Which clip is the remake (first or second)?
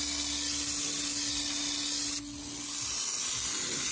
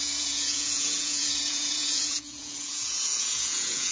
second